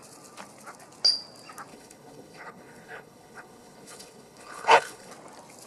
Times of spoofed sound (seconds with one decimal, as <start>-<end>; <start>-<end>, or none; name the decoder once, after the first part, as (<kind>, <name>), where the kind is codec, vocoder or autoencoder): 1.7-5.1 (codec, HILCodec)